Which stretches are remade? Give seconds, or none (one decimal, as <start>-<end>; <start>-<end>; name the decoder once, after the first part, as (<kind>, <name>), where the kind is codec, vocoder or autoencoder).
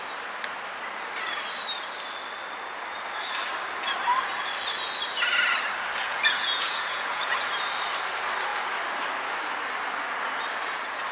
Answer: 6.0-7.3 (vocoder, Vocos)